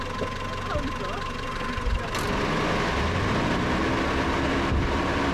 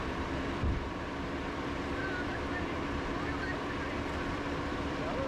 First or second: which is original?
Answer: first